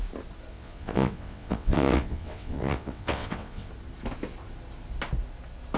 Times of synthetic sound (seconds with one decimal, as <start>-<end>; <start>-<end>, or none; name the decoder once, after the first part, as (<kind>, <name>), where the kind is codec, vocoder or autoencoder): 0.5-3.7 (vocoder, WaveNeXt)

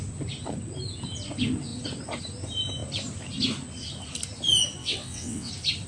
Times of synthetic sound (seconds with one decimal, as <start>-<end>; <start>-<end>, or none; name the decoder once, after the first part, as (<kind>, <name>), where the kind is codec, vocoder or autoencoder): 4.8-5.5 (vocoder, WaveNeXt)

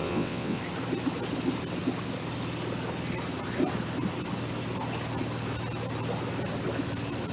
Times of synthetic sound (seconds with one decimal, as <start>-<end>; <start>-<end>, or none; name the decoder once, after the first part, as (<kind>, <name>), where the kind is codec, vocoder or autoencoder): 0.0-0.6 (vocoder, WaveNeXt)

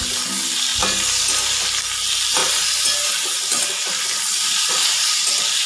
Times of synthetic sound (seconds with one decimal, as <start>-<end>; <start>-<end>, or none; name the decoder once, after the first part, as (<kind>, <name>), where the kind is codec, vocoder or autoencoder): none